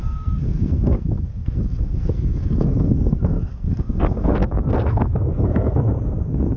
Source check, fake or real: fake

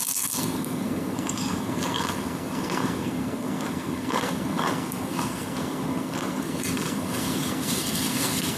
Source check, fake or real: fake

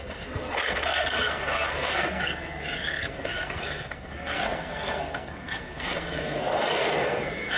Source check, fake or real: fake